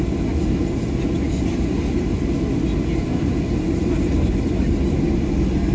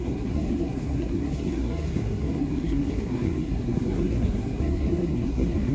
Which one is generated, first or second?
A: second